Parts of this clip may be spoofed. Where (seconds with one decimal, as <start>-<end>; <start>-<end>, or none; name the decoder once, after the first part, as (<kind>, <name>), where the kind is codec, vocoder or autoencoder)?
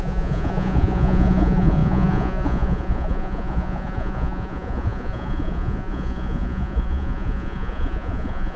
0.0-8.6 (vocoder, Vocos)